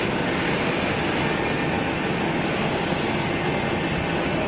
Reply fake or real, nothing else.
real